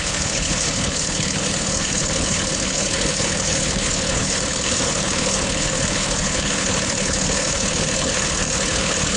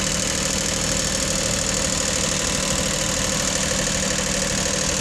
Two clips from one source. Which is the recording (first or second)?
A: second